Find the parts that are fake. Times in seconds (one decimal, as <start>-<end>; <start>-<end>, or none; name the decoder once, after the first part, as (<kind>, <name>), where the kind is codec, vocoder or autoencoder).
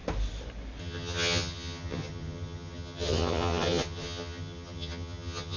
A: 0.8-5.6 (vocoder, HiFi-GAN)